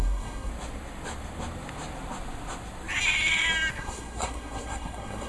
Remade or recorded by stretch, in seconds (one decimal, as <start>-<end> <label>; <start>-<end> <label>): 0.0-0.5 remade; 0.5-3.7 recorded; 3.7-5.3 remade